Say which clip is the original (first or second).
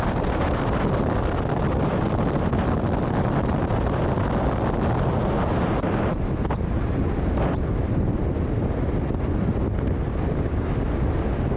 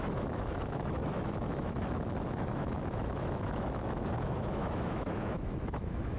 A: first